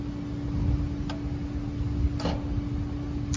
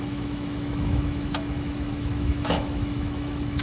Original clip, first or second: first